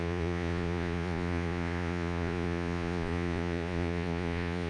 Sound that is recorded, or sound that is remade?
remade